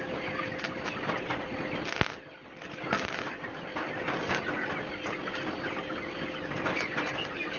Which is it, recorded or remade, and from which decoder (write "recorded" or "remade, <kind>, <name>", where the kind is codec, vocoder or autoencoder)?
recorded